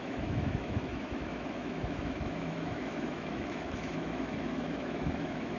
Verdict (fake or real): fake